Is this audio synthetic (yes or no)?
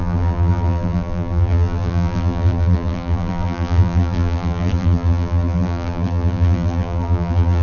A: yes